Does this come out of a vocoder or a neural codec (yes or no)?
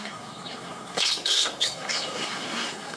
yes